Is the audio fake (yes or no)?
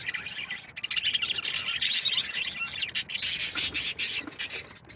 no